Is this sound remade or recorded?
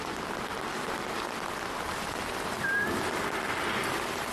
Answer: recorded